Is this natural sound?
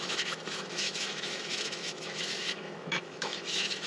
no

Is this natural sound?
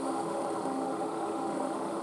no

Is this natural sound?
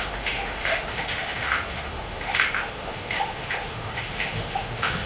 no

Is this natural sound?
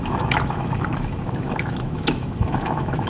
no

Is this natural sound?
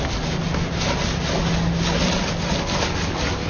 yes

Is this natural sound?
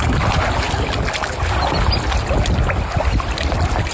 yes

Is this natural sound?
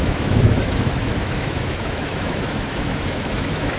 no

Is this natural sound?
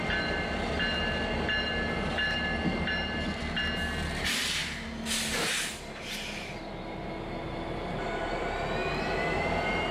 yes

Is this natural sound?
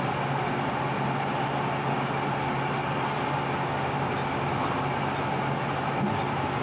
yes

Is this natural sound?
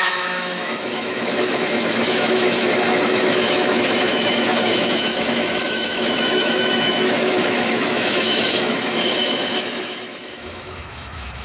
no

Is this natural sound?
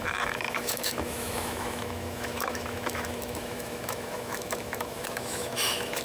no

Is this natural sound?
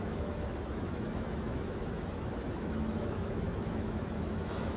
no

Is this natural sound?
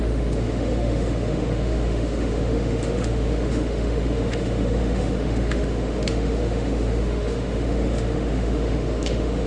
no